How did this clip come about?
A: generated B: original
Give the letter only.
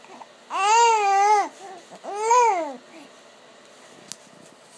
B